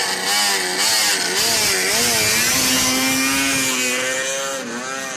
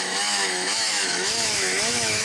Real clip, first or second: first